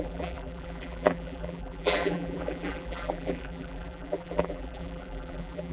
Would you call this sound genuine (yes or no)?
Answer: no